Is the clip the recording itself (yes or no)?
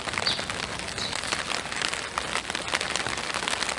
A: yes